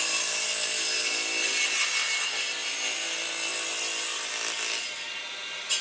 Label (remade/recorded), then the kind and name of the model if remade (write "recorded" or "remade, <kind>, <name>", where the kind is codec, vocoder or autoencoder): recorded